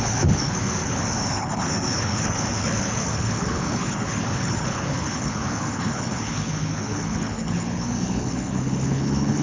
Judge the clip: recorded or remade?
remade